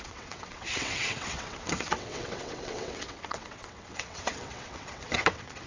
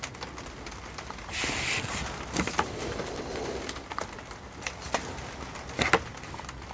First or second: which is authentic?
second